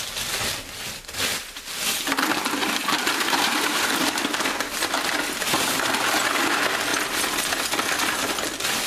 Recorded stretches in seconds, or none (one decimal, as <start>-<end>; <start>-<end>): 0.0-2.6; 4.4-8.9